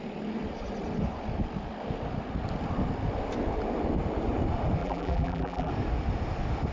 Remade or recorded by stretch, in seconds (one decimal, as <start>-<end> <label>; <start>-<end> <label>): 0.0-4.8 recorded; 4.8-5.7 remade; 5.7-6.7 recorded